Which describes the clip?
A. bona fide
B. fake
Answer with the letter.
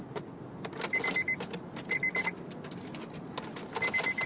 A